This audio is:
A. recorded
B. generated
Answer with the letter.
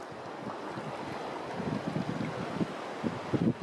A